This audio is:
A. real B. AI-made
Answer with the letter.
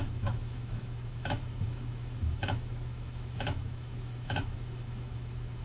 B